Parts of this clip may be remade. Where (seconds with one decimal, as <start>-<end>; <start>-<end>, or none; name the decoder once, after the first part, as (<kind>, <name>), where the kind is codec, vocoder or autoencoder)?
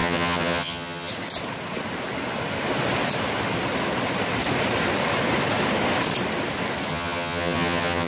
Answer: 0.0-1.1 (vocoder, HiFi-GAN); 6.9-8.1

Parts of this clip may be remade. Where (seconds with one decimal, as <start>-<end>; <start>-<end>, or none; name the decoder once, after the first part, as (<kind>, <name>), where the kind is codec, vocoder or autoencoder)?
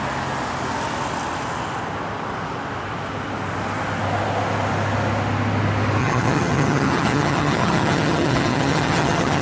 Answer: 6.0-9.4 (vocoder, HiFi-GAN)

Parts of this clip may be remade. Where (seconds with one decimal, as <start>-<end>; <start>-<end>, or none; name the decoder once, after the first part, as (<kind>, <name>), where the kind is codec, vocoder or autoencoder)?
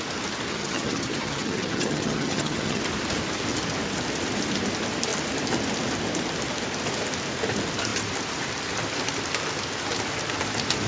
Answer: 0.5-2.8 (vocoder, HiFi-GAN)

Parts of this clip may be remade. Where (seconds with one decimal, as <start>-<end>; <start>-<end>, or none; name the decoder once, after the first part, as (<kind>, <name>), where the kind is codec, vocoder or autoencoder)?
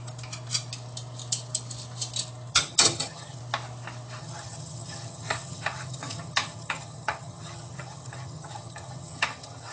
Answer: 2.5-3.4 (vocoder, HiFi-GAN); 4.2-9.7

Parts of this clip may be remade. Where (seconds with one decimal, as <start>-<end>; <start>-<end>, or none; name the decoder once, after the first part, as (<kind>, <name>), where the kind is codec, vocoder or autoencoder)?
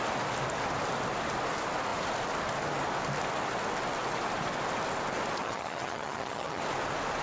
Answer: 5.4-6.6 (vocoder, HiFi-GAN)